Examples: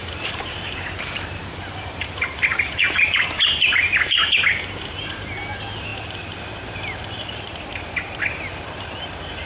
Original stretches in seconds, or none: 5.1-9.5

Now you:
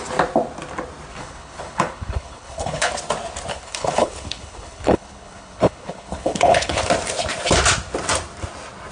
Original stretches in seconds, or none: 0.0-1.1; 2.9-3.5; 6.8-8.9

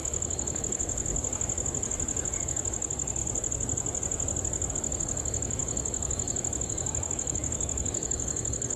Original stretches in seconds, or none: 1.1-2.4; 3.2-4.7